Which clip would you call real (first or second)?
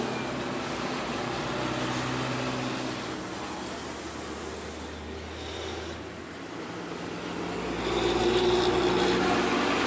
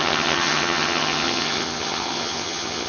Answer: first